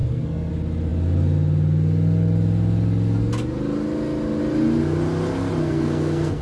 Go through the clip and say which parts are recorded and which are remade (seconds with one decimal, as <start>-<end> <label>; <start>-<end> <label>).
0.0-0.5 remade; 0.5-5.6 recorded; 5.6-6.4 remade